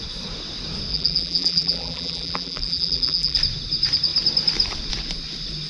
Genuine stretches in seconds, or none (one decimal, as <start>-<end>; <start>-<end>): 0.0-0.9; 3.4-5.7